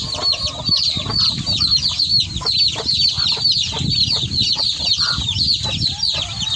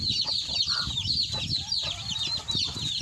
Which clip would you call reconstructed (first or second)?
second